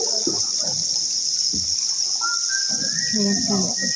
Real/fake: real